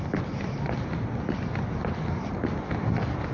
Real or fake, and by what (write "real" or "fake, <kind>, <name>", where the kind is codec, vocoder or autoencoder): fake, vocoder, BigVGAN v2